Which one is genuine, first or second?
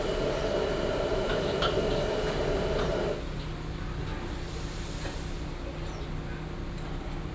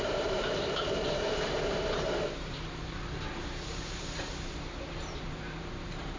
first